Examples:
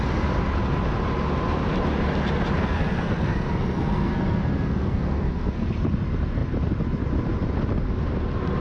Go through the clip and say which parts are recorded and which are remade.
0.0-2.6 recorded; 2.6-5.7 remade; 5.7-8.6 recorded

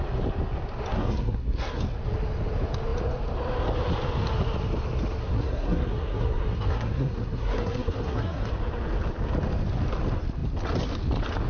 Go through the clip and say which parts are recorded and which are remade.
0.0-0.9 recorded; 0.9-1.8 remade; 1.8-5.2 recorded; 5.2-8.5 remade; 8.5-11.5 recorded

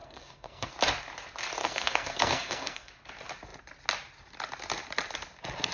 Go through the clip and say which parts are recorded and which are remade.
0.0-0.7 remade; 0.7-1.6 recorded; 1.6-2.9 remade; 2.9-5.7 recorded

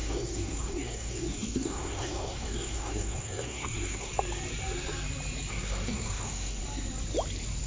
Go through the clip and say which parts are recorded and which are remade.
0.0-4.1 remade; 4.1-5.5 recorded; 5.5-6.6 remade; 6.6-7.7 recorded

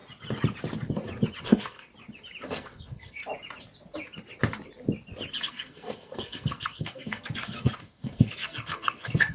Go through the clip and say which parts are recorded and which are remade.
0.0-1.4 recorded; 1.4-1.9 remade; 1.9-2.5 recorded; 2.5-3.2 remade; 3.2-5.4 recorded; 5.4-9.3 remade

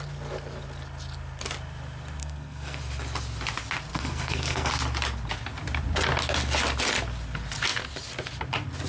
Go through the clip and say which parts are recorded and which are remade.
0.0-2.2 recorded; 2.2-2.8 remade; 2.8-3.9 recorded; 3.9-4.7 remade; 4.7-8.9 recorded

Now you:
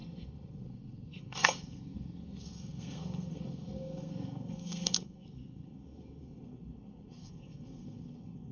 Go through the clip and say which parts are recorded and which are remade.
0.0-8.5 remade

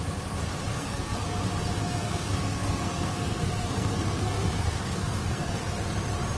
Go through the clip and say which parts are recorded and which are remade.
0.0-0.7 recorded; 0.7-1.4 remade; 1.4-1.8 recorded; 1.8-5.6 remade; 5.6-6.4 recorded